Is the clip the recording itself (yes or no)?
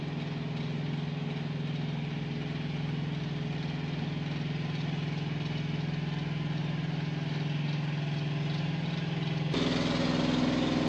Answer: yes